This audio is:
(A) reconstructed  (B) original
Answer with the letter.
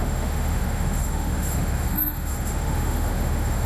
A